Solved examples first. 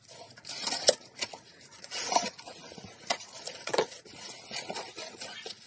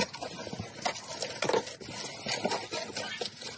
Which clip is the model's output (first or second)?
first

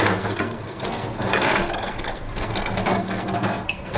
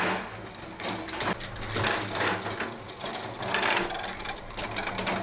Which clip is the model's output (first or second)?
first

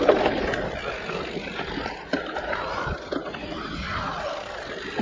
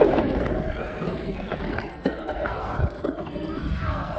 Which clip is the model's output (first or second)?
second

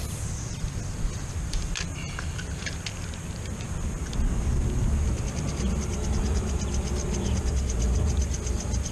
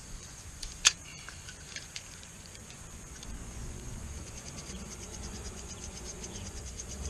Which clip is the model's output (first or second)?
second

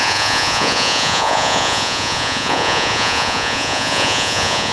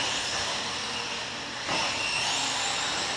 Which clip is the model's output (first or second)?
first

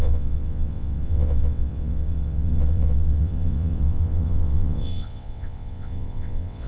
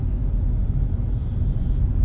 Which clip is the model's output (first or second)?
first